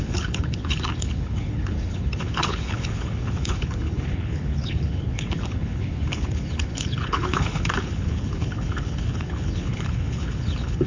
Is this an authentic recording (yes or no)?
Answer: no